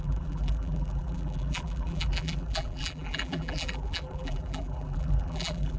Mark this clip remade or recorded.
remade